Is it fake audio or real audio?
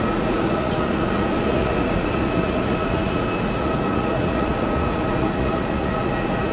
fake